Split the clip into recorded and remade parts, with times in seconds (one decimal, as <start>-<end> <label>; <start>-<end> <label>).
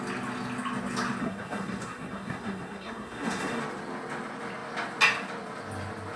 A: 0.0-1.2 recorded; 1.2-3.6 remade; 3.6-6.2 recorded